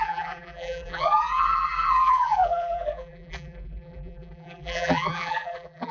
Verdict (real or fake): fake